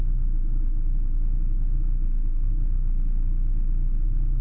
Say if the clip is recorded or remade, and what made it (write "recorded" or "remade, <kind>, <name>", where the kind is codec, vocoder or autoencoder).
recorded